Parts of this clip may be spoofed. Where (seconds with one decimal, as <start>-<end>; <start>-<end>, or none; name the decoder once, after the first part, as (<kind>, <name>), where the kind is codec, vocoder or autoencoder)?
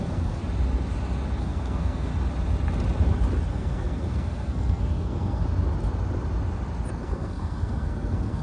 0.0-0.4 (codec, SNAC); 1.4-2.1; 3.5-5.4; 6.9-8.4